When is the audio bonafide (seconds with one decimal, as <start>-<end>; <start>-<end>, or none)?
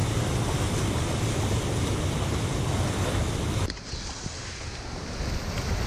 0.0-5.9